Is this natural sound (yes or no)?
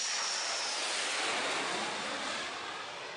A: yes